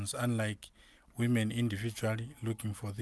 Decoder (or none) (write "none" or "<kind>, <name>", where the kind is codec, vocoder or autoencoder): none